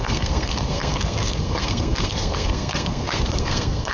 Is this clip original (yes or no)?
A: no